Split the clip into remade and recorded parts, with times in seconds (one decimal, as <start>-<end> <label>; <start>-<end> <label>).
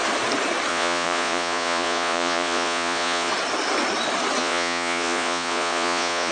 0.0-0.7 recorded; 0.7-3.3 remade; 3.3-4.4 recorded; 4.4-6.3 remade